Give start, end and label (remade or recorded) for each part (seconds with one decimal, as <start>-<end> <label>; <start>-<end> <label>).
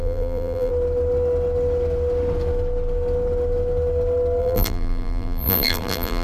0.0-0.7 remade; 0.7-4.4 recorded; 4.4-6.2 remade